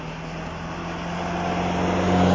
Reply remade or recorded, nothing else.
recorded